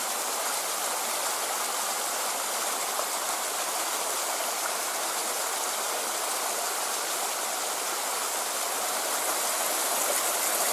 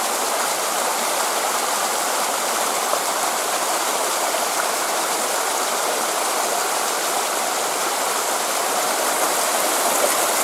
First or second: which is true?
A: first